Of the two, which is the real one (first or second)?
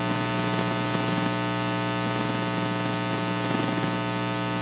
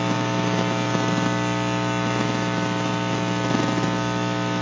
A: first